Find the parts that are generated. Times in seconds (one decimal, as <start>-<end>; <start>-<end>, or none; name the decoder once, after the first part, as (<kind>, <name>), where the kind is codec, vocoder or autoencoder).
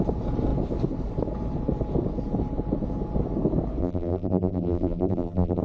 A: 3.8-5.6 (vocoder, BigVGAN v2)